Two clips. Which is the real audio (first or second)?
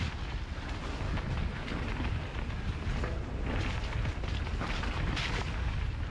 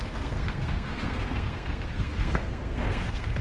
first